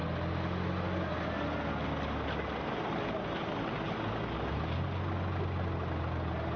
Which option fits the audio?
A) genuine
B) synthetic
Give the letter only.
A